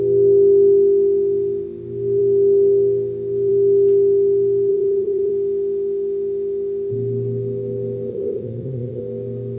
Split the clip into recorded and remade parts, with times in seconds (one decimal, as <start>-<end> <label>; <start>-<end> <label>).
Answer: 0.0-4.7 recorded; 4.7-5.3 remade; 5.3-8.1 recorded; 8.1-9.0 remade; 9.0-9.6 recorded

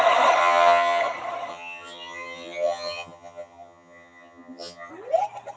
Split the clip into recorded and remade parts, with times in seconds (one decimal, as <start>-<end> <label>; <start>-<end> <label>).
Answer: 0.0-0.4 recorded; 0.4-1.0 remade; 1.0-1.5 recorded; 1.5-4.9 remade; 4.9-5.6 recorded

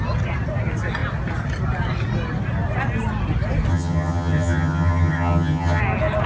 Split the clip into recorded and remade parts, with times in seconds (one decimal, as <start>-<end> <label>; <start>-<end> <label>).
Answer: 0.0-3.7 recorded; 3.7-5.8 remade; 5.8-6.3 recorded

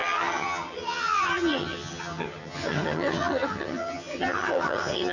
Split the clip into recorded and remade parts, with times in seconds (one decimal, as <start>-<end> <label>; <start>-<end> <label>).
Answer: 0.0-5.1 remade

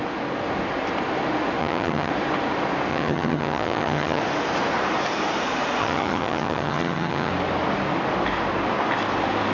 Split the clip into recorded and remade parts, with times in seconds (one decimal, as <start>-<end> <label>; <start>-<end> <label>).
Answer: 0.0-1.6 recorded; 1.6-2.1 remade; 2.1-2.9 recorded; 2.9-4.2 remade; 4.2-5.8 recorded; 5.8-7.3 remade; 7.3-9.5 recorded